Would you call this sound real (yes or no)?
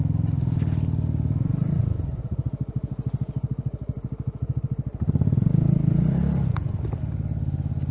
yes